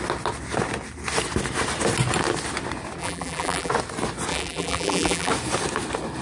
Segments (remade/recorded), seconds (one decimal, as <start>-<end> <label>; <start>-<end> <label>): 0.0-3.0 recorded; 3.0-3.7 remade; 3.7-4.3 recorded; 4.3-5.3 remade; 5.3-6.2 recorded